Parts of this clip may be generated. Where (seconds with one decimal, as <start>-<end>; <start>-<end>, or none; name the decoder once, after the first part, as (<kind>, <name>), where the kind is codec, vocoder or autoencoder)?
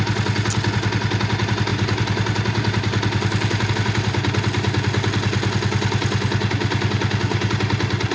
1.7-3.7 (vocoder, BigVGAN v2)